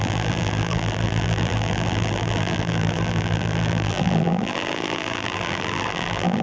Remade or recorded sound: remade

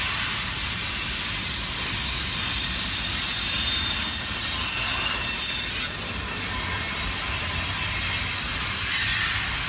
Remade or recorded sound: recorded